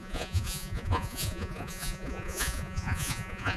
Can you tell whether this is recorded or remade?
remade